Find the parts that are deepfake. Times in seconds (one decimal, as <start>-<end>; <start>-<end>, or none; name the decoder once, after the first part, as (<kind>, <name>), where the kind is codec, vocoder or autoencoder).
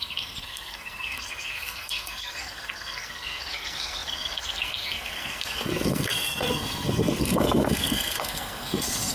0.0-9.1 (codec, SNAC)